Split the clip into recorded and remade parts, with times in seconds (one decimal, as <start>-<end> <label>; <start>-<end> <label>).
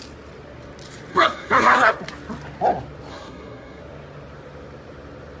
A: 0.0-1.1 recorded; 1.1-1.9 remade; 1.9-3.1 recorded; 3.1-3.8 remade; 3.8-5.4 recorded